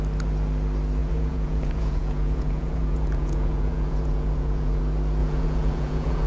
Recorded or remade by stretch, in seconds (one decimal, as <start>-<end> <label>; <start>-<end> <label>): 0.0-1.0 recorded; 1.0-4.8 remade; 4.8-5.2 recorded; 5.2-6.3 remade